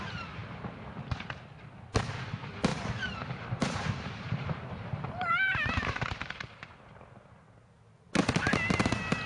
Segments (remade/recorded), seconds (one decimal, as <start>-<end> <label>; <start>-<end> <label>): 0.0-2.7 recorded; 2.7-6.7 remade; 6.7-9.3 recorded